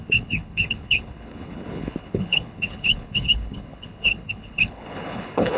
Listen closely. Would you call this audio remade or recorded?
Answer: remade